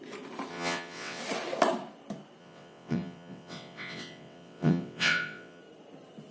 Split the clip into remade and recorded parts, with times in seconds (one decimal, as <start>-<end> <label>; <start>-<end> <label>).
0.0-0.5 recorded; 0.5-1.2 remade; 1.2-2.4 recorded; 2.4-5.6 remade; 5.6-6.3 recorded